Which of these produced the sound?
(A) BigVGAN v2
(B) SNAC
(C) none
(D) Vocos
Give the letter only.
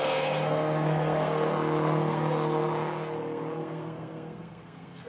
B